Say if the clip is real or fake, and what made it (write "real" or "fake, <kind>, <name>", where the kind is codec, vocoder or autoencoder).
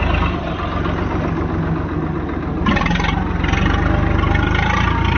real